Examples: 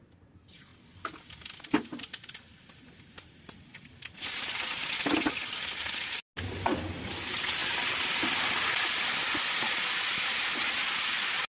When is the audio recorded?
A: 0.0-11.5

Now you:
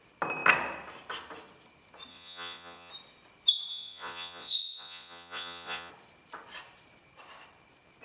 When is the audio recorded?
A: 0.0-2.1; 2.9-3.7; 5.9-8.0